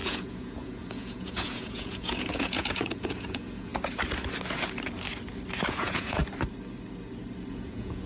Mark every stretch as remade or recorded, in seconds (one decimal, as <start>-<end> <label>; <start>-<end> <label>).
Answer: 0.0-3.7 remade; 3.7-5.7 recorded; 5.7-6.2 remade; 6.2-7.5 recorded; 7.5-8.1 remade